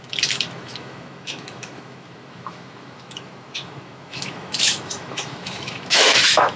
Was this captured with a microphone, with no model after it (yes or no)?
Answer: no